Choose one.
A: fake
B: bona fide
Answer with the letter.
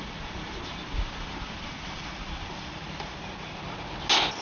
B